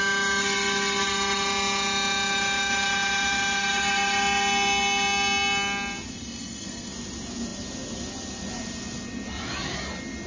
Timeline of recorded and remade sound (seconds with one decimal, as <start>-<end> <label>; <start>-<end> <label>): 0.0-6.1 recorded; 6.1-6.9 remade; 6.9-10.3 recorded

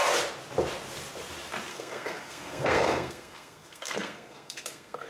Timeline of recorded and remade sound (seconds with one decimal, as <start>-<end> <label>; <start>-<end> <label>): 0.0-1.7 recorded; 1.7-5.1 remade